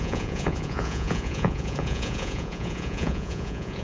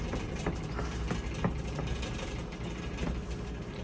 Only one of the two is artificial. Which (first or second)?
first